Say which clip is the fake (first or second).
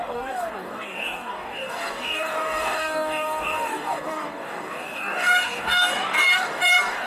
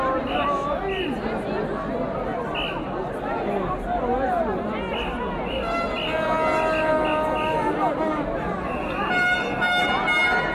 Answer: first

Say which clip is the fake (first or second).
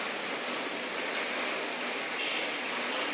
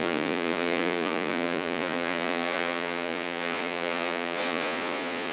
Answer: second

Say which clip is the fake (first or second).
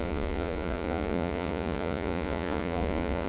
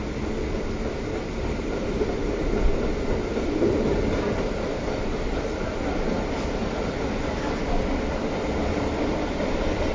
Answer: first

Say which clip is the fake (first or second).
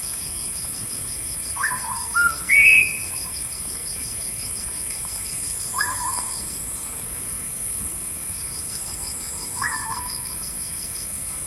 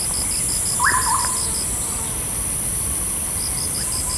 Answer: first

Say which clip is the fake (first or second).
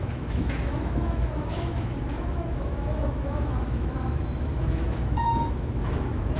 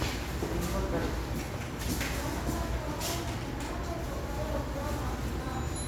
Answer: first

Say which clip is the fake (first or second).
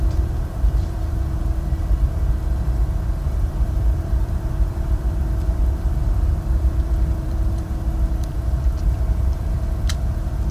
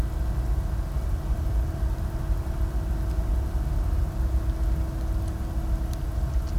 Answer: first